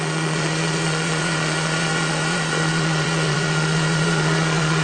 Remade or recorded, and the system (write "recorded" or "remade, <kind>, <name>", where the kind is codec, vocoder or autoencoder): remade, vocoder, Vocos